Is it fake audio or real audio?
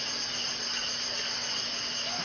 real